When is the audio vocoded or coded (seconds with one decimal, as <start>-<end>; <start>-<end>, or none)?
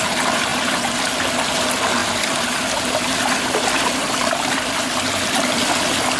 2.0-5.7